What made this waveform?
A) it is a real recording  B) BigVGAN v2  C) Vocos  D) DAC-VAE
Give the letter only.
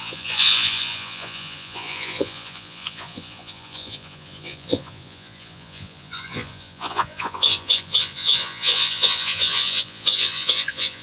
C